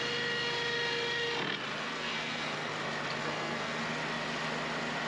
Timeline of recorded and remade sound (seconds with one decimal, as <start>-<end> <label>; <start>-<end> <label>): 0.0-1.8 recorded; 1.8-2.7 remade; 2.7-3.2 recorded; 3.2-3.8 remade; 3.8-5.1 recorded